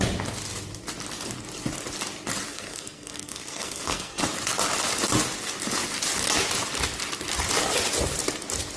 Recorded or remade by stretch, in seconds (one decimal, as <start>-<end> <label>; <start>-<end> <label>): 0.0-2.5 recorded; 2.5-4.2 remade; 4.2-8.8 recorded